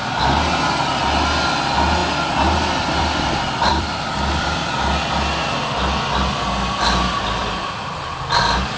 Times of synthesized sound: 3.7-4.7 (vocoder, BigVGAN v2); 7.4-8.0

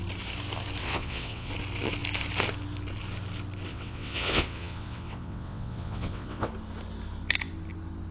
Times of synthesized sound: 0.8-1.5 (vocoder, WaveNeXt); 3.7-6.5

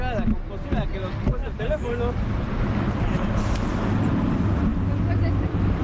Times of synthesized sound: none

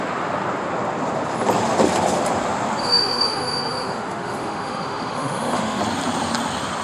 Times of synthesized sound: 2.8-5.8 (autoencoder, DAC-VAE)

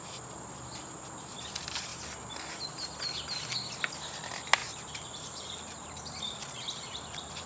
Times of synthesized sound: 4.6-7.5 (vocoder, BigVGAN v2)

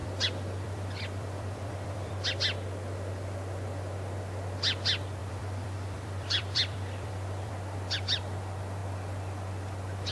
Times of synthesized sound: 0.0-2.1 (vocoder, BigVGAN v2); 5.2-7.5

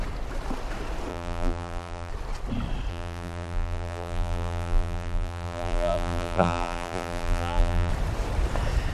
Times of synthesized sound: 1.1-2.1 (vocoder, BigVGAN v2); 2.9-7.9

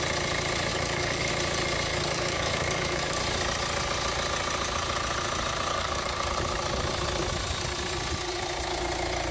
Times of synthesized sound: 0.7-1.3 (codec, DAC); 1.9-3.2; 5.7-6.3